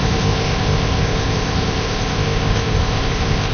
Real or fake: fake